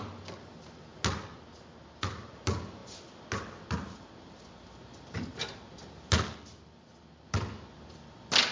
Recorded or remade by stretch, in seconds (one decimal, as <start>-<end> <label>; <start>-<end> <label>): 0.0-8.5 recorded